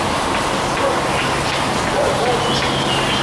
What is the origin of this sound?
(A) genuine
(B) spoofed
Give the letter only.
A